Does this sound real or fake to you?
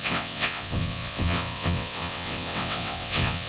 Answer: fake